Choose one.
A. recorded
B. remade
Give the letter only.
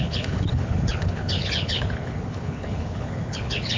B